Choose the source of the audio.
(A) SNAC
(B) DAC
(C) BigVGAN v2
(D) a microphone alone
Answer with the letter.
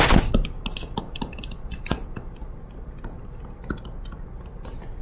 D